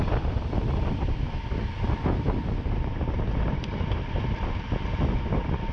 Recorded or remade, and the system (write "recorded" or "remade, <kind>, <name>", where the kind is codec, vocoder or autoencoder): recorded